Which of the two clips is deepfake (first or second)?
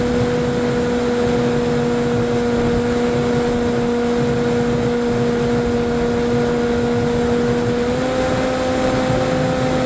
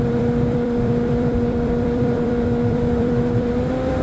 second